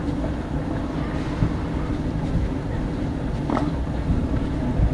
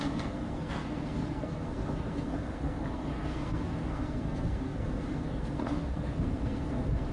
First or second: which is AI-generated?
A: second